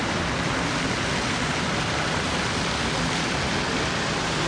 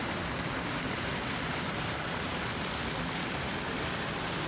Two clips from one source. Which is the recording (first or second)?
first